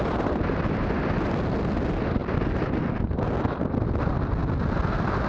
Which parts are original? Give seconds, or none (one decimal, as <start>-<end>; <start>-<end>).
0.0-5.3